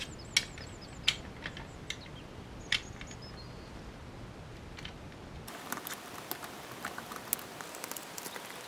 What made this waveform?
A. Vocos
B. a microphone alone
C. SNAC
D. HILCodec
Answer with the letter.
B